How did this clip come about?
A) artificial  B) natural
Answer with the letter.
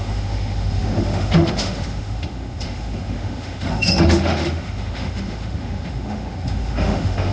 A